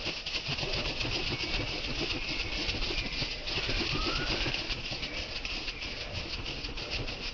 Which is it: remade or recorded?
recorded